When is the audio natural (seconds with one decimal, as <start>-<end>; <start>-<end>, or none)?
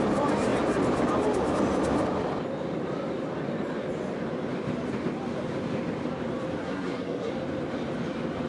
0.0-6.6; 7.3-8.5